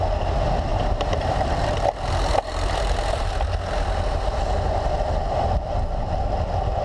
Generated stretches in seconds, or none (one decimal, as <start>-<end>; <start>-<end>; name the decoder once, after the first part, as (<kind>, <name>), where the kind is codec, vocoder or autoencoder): 0.7-3.3 (vocoder, BigVGAN v2)